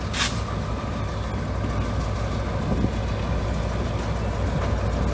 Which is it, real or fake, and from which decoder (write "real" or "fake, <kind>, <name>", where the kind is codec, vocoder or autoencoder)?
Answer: real